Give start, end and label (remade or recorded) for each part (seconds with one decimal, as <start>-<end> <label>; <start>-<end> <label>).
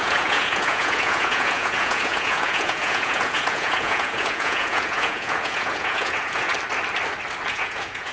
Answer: 0.0-6.5 remade; 6.5-7.5 recorded; 7.5-8.1 remade